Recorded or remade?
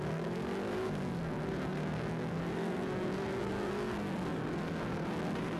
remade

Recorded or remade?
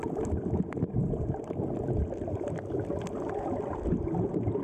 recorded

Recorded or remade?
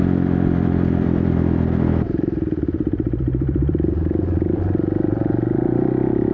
remade